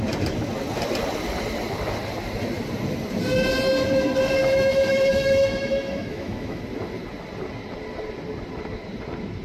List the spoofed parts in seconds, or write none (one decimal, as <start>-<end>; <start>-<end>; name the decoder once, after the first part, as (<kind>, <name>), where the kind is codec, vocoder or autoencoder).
4.4-6.6 (autoencoder, DAC-VAE)